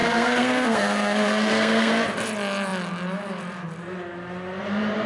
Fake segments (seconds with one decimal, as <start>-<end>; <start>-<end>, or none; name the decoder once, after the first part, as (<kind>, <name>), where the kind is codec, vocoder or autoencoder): 0.0-1.9 (codec, SNAC)